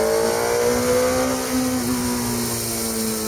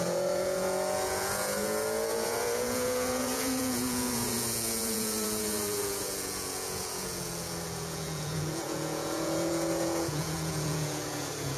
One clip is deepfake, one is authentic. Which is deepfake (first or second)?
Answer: second